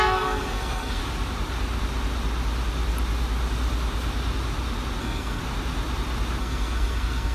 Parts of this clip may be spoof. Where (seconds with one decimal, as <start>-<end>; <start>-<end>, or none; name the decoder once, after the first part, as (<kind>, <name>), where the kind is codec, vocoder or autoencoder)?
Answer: 0.0-1.0 (codec, SNAC); 5.0-5.4; 6.4-7.3